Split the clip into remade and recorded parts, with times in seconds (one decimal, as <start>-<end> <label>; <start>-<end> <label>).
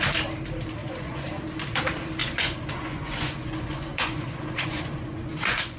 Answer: 0.0-0.8 recorded; 0.8-1.4 remade; 1.4-2.2 recorded; 2.2-5.8 remade